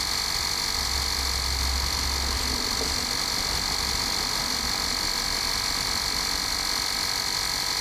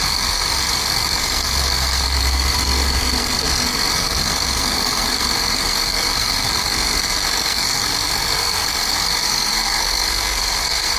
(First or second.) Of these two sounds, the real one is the first